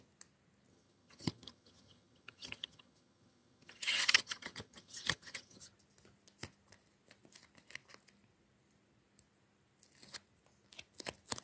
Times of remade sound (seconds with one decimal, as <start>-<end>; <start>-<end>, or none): 0.7-5.6